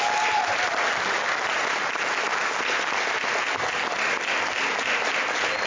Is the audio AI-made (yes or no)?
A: no